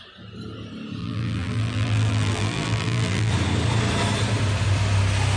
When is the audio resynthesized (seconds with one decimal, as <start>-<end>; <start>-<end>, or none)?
1.0-3.3